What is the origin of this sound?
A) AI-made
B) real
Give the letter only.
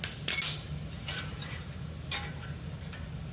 B